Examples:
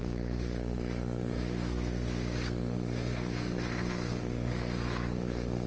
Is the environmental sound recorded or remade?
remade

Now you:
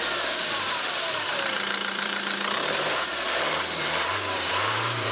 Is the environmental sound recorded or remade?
remade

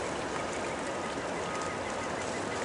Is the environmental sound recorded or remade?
remade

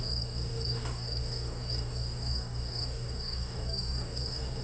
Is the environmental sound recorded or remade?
remade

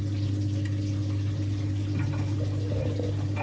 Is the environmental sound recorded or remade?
recorded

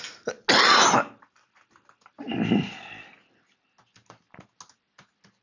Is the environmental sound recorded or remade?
recorded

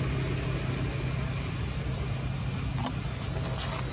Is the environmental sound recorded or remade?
recorded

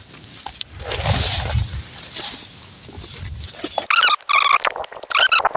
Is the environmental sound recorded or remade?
recorded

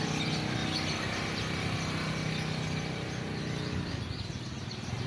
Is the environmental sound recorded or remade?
recorded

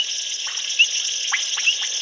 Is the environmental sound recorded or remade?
recorded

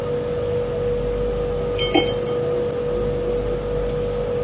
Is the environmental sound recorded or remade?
recorded